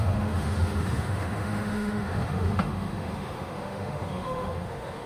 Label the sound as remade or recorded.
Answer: remade